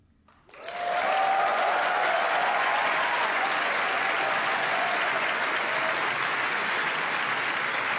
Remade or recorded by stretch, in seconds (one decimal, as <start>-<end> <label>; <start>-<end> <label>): 0.0-1.5 recorded; 1.5-5.8 remade; 5.8-6.3 recorded; 6.3-7.1 remade; 7.1-8.0 recorded